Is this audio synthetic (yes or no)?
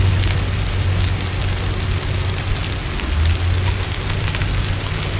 no